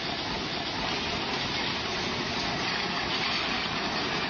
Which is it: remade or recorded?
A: recorded